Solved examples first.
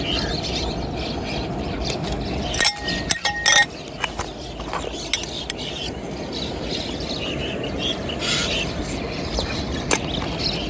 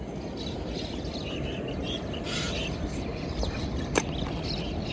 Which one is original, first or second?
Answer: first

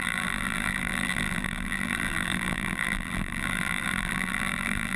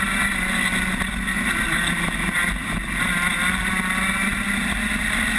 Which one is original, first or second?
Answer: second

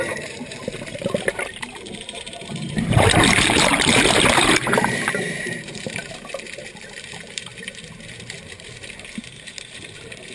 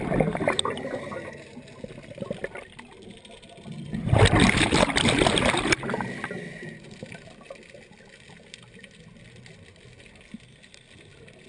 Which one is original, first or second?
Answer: second